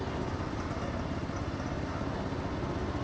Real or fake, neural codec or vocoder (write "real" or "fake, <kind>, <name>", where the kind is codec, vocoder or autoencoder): real